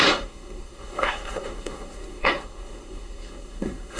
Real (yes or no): no